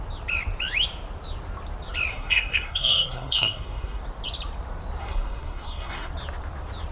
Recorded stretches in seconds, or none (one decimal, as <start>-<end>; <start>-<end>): 0.0-2.1; 4.0-5.0; 6.1-6.9